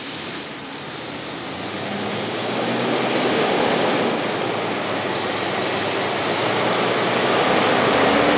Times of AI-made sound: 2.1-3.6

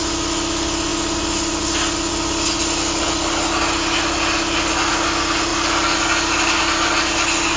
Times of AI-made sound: none